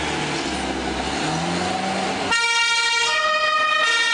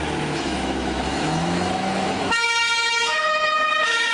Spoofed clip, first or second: second